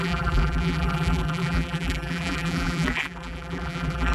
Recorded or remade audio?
remade